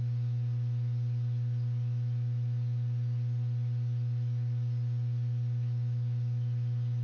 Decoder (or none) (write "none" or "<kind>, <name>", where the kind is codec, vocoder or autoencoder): none